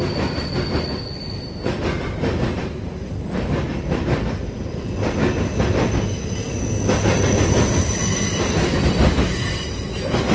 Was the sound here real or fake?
real